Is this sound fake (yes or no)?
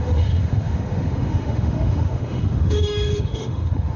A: yes